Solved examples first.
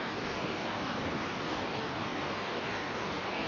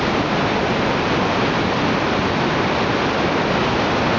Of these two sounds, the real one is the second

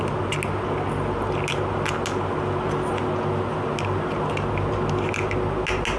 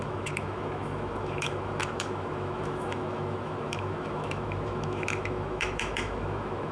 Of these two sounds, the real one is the first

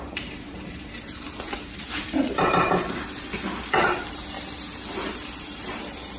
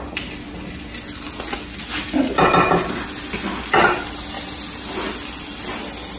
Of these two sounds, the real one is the second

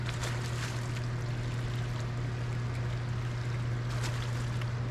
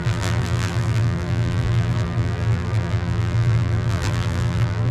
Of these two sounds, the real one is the first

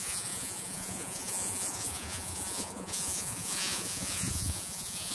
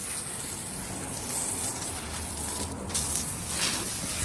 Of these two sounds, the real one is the second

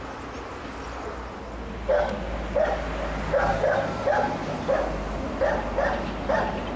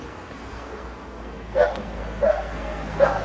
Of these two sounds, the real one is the first